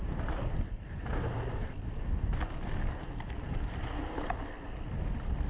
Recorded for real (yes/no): yes